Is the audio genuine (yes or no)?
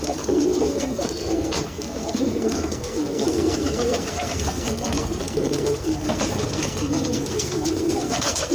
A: no